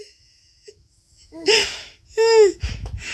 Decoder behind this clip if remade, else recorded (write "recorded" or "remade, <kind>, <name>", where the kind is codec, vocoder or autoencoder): remade, autoencoder, DAC-VAE